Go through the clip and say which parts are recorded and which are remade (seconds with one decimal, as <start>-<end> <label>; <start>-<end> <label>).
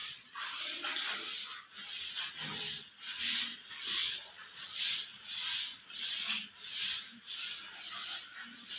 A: 0.0-0.8 remade; 0.8-4.0 recorded; 4.0-4.8 remade; 4.8-8.8 recorded